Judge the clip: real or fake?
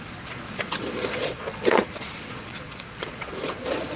fake